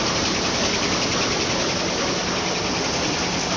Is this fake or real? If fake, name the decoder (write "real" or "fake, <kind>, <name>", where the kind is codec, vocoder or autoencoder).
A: real